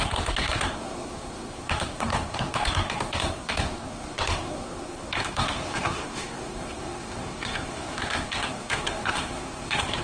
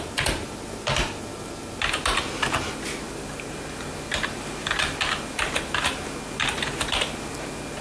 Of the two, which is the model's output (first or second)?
first